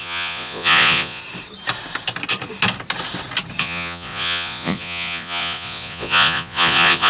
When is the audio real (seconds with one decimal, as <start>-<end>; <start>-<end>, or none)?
1.2-3.6